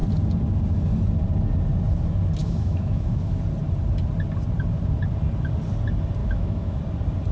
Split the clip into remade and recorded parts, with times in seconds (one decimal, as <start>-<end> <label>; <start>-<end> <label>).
0.0-2.4 recorded; 2.4-3.4 remade; 3.4-6.2 recorded; 6.2-6.8 remade; 6.8-7.3 recorded